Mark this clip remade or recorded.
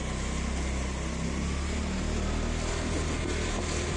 recorded